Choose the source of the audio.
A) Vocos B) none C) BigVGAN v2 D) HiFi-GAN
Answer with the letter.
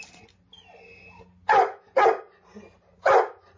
B